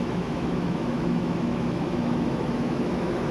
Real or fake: fake